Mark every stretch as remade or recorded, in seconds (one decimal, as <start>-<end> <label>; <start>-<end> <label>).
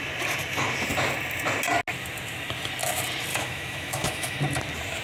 0.0-3.3 recorded; 3.3-4.4 remade; 4.4-5.0 recorded